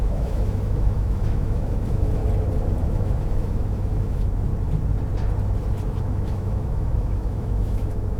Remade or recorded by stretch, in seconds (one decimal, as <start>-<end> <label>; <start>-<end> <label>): 0.0-2.2 remade; 2.2-2.8 recorded; 2.8-4.5 remade; 4.5-6.0 recorded; 6.0-8.2 remade